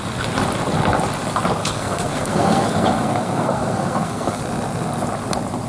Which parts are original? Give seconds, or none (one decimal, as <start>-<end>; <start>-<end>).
0.0-1.6; 4.4-5.7